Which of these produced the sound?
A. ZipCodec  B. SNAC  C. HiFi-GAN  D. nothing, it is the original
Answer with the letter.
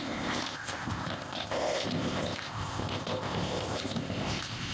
A